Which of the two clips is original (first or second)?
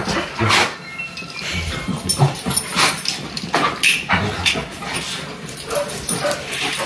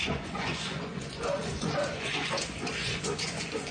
first